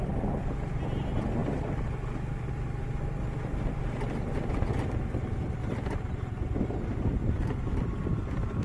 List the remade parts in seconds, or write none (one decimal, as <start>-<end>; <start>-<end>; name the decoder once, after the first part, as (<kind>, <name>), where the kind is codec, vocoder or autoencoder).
none

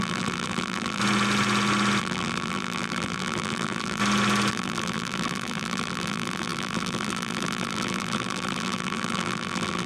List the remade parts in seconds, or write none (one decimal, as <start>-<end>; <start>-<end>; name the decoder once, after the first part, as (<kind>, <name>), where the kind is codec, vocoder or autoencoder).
0.0-1.0 (vocoder, BigVGAN v2); 2.0-4.0; 4.5-9.9

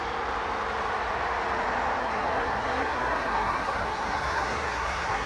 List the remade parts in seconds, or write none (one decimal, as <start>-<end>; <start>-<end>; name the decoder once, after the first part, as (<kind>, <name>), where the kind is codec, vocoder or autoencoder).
2.0-5.3 (codec, SNAC)

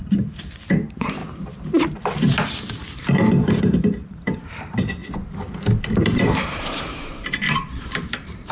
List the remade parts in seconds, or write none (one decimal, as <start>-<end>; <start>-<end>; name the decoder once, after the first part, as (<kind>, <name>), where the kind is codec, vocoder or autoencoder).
0.0-1.2 (vocoder, BigVGAN v2); 3.6-5.0; 6.2-8.5

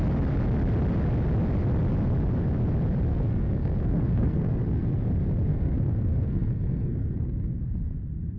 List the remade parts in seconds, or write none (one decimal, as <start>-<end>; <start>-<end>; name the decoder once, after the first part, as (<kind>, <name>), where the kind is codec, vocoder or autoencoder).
3.1-5.0 (codec, SNAC); 5.5-7.5